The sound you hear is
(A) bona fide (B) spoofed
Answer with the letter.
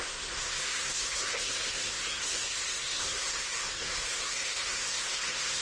B